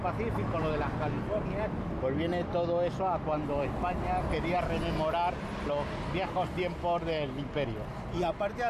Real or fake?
real